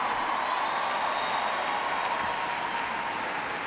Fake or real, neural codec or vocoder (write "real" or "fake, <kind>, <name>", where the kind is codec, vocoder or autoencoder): real